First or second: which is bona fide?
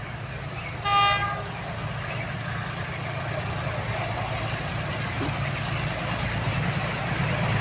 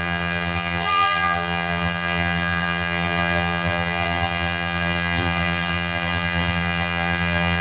first